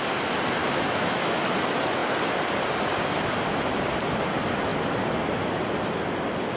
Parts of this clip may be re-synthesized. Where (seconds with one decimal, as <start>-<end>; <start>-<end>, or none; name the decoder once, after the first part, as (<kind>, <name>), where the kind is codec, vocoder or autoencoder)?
0.6-1.4 (autoencoder, DAC-VAE)